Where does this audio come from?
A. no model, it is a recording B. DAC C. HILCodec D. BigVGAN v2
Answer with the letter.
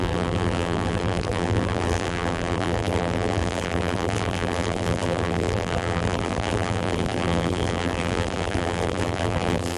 D